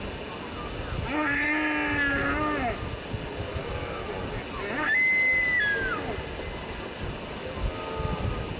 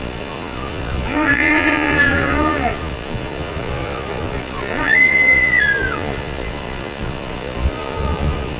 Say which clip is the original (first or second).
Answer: first